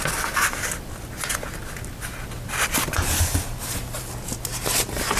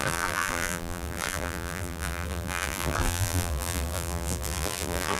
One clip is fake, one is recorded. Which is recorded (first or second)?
first